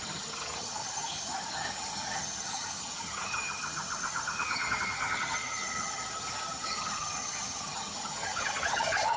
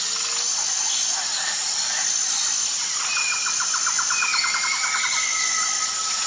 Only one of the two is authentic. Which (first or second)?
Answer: second